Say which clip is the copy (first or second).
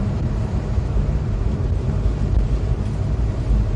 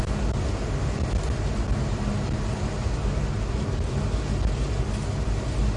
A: first